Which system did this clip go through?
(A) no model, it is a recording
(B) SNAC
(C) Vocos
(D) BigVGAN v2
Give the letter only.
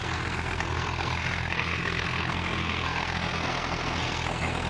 B